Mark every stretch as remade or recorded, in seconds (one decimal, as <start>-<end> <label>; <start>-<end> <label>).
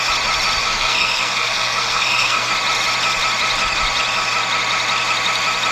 0.0-0.6 recorded; 0.6-2.5 remade; 2.5-5.7 recorded